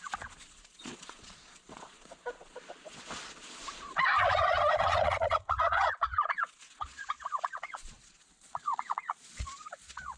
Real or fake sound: fake